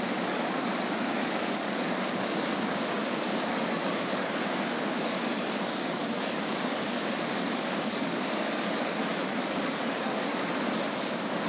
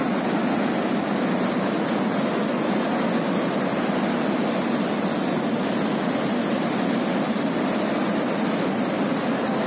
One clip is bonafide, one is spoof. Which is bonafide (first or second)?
second